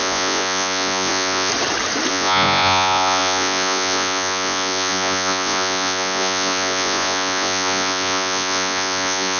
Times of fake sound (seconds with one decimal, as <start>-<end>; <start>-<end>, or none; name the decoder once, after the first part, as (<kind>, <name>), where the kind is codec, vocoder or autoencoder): 0.0-1.5 (vocoder, Vocos); 2.1-9.4